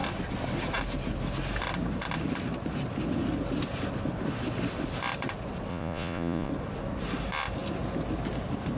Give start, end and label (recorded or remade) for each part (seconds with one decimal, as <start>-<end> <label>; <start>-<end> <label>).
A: 0.0-5.7 recorded; 5.7-6.5 remade; 6.5-8.8 recorded